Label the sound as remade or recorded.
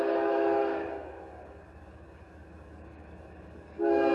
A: remade